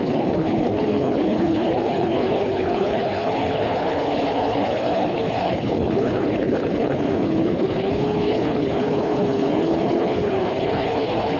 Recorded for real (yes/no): no